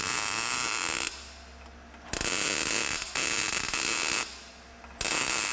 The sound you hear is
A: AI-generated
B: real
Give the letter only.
B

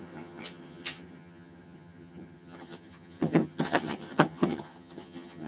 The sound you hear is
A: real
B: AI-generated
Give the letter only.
B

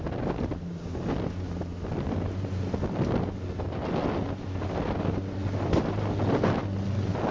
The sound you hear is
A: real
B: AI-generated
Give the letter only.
A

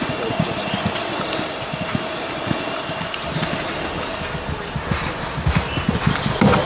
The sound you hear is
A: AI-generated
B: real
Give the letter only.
B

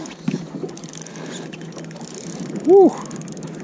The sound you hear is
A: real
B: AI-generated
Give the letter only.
A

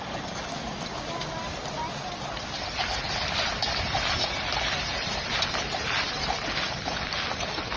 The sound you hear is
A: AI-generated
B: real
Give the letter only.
B